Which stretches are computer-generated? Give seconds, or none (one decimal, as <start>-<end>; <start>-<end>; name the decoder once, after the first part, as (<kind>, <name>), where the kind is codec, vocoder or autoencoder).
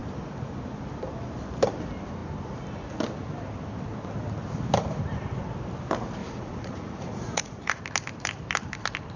6.2-7.8 (vocoder, Vocos)